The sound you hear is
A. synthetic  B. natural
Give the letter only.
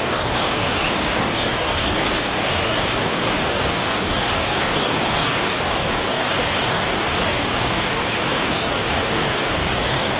A